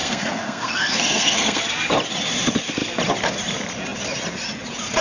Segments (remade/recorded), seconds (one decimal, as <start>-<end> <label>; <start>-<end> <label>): 0.0-1.6 remade; 1.6-5.0 recorded